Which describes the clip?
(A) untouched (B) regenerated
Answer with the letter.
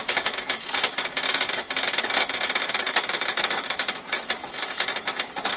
B